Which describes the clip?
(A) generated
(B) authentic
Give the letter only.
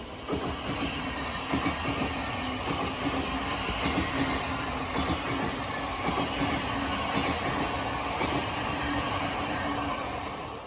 B